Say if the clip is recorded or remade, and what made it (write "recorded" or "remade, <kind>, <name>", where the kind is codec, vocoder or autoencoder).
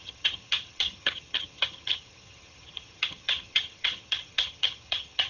remade, vocoder, HiFi-GAN